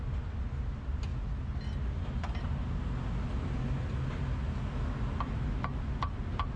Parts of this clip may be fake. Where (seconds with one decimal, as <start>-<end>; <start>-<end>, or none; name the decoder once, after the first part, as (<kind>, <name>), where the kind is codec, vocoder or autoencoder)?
none